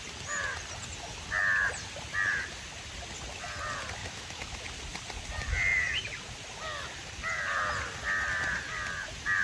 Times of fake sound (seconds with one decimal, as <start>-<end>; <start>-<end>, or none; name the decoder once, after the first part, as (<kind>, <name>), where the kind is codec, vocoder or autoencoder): 4.0-4.6 (autoencoder, DAC-VAE)